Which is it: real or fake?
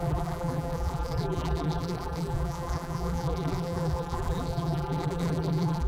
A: fake